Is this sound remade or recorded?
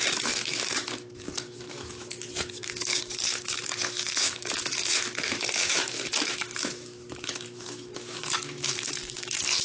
remade